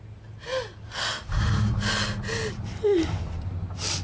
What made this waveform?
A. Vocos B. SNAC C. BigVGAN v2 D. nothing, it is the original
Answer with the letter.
D